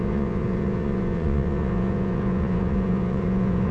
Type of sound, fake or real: fake